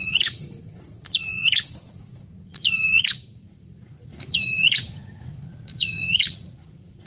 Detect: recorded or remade remade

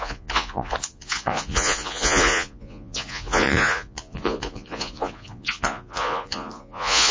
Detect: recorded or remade remade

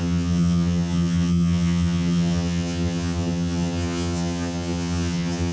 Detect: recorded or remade remade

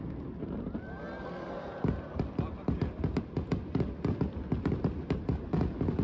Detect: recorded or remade recorded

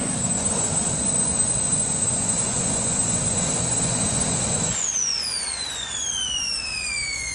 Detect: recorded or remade remade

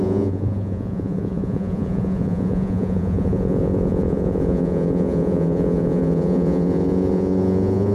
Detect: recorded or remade remade